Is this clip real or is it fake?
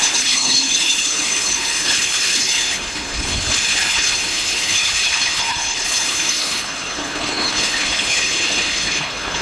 fake